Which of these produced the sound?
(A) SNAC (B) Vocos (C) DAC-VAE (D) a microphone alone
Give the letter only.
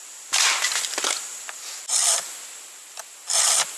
D